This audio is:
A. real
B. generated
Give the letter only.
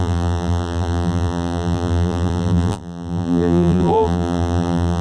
B